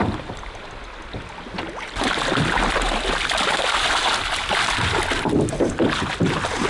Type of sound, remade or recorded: recorded